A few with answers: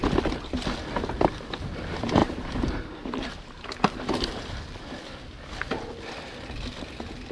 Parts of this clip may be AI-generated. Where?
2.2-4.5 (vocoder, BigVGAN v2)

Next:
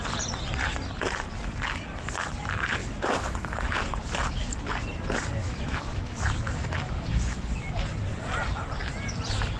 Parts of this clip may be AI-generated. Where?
2.8-3.9 (autoencoder, DAC-VAE); 5.4-7.6

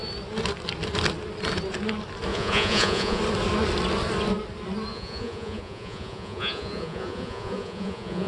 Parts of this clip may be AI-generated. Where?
2.3-3.2 (vocoder, Vocos); 4.9-8.3

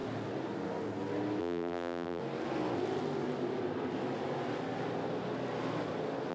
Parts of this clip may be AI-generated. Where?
1.4-2.2 (vocoder, BigVGAN v2)

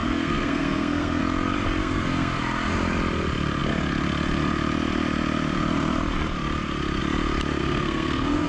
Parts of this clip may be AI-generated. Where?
0.0-1.2 (codec, SNAC); 1.8-2.4; 7.6-8.5

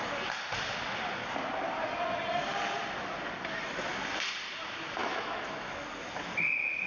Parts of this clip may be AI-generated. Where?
5.0-5.7 (autoencoder, DAC-VAE)